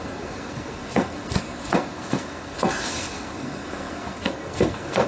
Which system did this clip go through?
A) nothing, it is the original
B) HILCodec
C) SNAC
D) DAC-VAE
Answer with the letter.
C